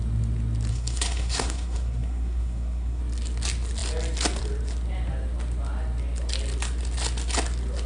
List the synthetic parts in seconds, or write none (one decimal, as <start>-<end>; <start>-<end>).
0.7-3.0